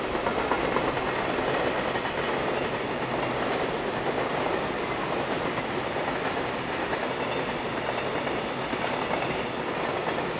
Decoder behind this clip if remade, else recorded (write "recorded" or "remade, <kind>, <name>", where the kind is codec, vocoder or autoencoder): recorded